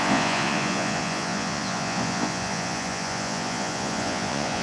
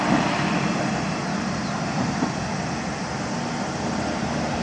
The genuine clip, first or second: second